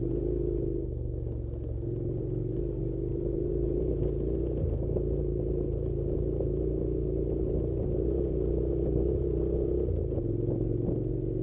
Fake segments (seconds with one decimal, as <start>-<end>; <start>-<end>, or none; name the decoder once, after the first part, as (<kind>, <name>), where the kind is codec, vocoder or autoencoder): 3.1-3.9 (vocoder, BigVGAN v2)